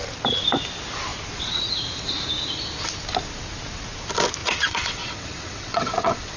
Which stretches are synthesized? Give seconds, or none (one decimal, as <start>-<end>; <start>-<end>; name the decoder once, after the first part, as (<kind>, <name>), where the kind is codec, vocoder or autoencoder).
4.4-6.4 (vocoder, WaveNeXt)